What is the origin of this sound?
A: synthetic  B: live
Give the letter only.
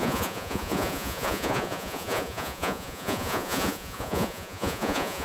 A